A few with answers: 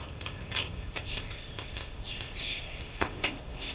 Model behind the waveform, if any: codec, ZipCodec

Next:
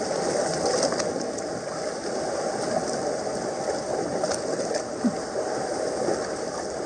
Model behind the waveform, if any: none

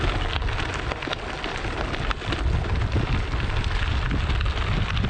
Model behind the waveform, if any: none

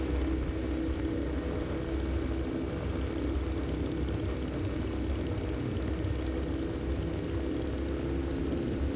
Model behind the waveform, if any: none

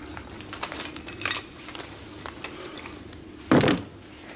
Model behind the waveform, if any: none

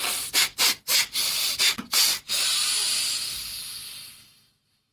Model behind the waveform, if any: none